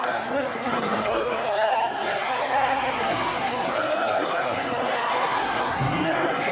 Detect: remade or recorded remade